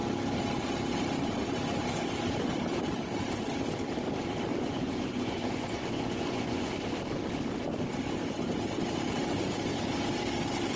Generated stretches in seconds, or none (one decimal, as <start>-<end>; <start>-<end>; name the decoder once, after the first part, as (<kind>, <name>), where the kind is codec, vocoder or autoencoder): 4.5-6.7 (vocoder, Vocos)